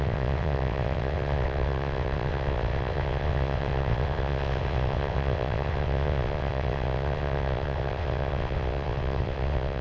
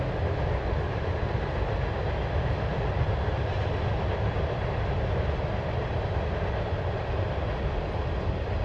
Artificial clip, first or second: first